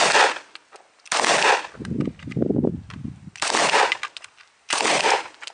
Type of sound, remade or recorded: recorded